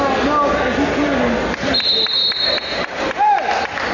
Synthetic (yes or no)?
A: no